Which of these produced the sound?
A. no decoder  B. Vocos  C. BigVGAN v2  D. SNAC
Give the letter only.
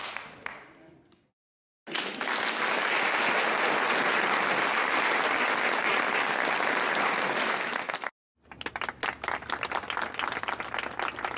A